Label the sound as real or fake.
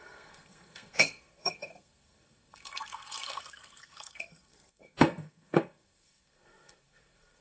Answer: fake